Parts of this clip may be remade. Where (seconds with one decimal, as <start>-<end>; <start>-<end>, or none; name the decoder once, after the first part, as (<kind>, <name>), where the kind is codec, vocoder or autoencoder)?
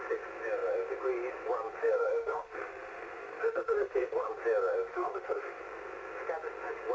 1.8-4.3 (autoencoder, DAC-VAE); 4.9-5.6